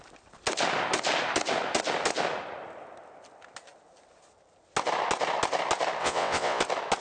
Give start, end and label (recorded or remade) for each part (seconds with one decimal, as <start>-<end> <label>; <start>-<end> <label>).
0.0-6.0 recorded; 6.0-6.6 remade; 6.6-7.0 recorded